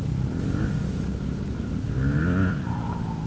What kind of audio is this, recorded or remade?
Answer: recorded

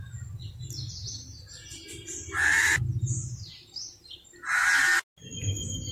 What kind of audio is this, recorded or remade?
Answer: recorded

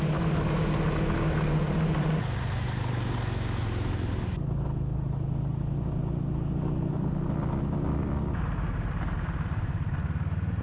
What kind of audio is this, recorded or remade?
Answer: recorded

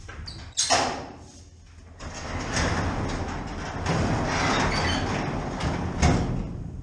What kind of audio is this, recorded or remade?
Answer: recorded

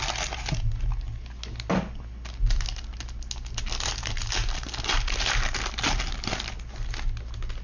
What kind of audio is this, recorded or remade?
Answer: recorded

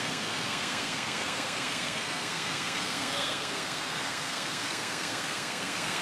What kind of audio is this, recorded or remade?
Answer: remade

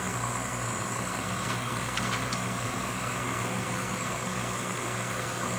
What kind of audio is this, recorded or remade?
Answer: remade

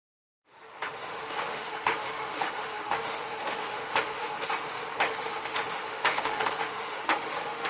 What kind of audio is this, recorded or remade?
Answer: remade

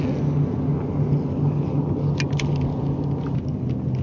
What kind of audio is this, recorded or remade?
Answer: recorded